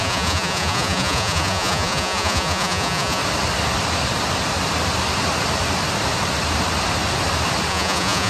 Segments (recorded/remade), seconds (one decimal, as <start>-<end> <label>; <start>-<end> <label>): 0.0-3.2 remade; 3.2-7.7 recorded; 7.7-8.3 remade